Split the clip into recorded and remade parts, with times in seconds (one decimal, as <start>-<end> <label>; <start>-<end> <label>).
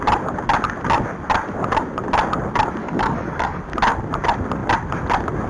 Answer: 0.0-2.8 recorded; 2.8-3.6 remade; 3.6-5.5 recorded